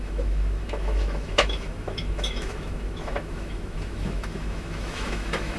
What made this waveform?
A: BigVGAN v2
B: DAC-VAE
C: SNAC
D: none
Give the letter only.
B